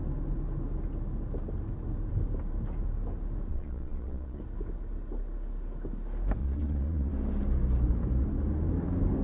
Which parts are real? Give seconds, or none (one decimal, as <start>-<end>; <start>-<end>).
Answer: 0.0-3.5; 4.4-6.4; 7.1-9.2

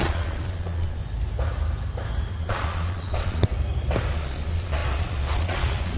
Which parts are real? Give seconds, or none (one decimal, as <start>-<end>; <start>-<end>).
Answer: 1.0-2.4; 3.5-4.1

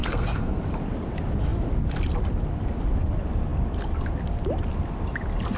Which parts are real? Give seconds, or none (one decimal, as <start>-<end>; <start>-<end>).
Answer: 0.6-5.6

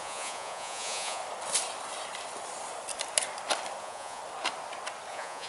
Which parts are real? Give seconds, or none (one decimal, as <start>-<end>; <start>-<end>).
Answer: 1.2-3.8; 4.2-5.1

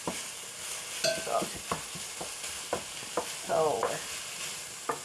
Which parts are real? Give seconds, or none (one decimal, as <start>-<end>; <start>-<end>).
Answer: 0.0-5.0

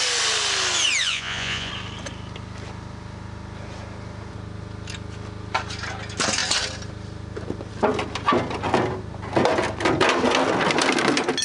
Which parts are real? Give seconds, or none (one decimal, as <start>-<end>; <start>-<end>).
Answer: 0.0-1.0; 1.7-11.4

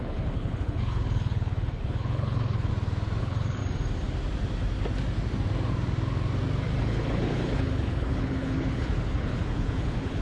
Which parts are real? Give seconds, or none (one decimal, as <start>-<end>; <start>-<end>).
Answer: 2.7-3.2; 3.6-6.8

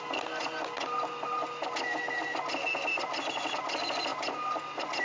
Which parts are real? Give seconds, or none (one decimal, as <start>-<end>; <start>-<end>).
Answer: 0.0-5.0